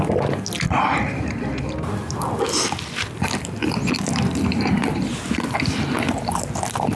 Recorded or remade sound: recorded